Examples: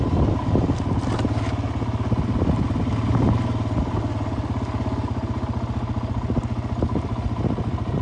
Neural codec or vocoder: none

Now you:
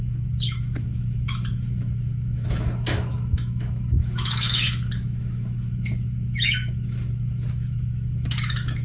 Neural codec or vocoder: autoencoder, DAC-VAE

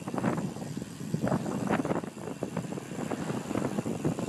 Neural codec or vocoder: none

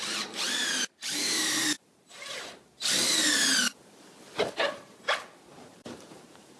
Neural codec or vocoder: vocoder, BigVGAN v2